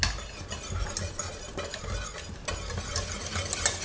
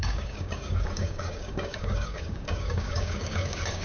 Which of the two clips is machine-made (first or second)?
second